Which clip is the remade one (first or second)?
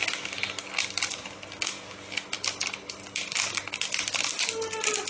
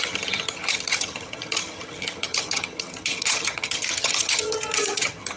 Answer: second